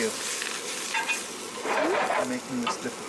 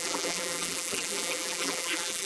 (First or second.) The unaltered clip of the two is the first